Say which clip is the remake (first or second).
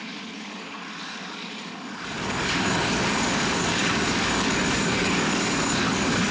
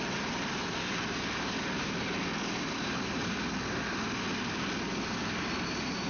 first